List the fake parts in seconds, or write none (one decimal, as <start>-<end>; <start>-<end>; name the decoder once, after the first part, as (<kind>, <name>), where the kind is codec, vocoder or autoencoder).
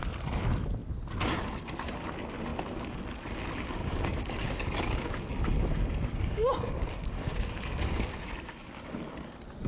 3.8-8.1 (codec, DAC)